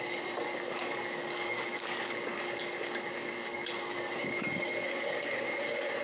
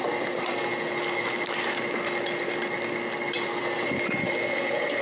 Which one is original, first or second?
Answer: second